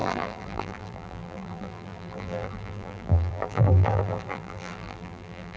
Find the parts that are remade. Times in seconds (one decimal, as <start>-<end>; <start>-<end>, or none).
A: 0.0-5.6